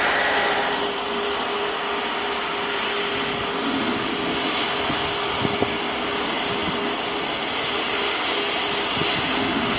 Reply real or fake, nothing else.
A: real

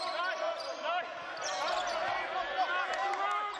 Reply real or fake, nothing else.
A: real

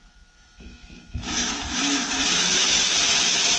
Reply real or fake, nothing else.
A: fake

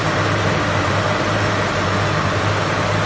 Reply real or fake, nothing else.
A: fake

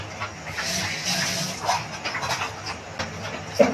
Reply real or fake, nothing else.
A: real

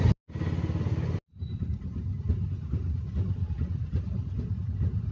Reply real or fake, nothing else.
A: real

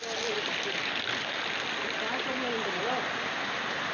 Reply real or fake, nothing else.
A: real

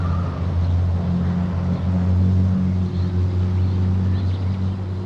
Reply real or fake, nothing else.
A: real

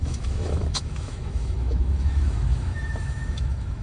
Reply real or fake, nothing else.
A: fake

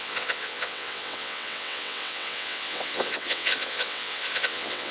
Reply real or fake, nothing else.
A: fake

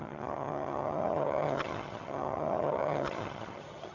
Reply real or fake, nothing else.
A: fake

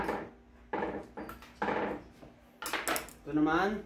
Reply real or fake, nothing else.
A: real